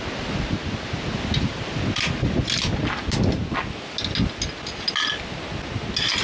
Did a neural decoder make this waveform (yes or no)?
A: no